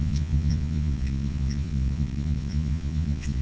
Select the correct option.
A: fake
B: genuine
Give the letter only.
A